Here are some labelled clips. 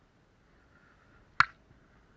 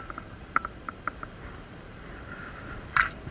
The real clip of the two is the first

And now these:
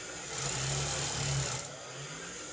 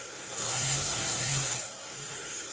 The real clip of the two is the first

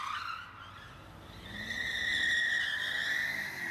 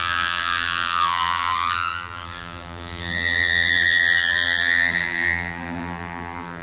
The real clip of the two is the first